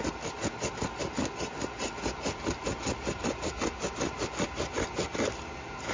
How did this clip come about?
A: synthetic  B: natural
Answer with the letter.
B